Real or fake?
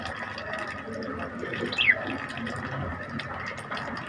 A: real